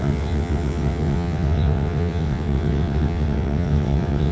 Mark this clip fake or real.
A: fake